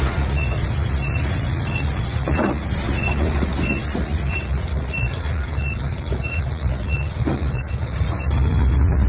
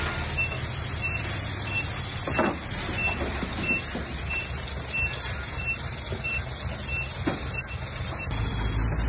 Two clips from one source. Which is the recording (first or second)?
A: second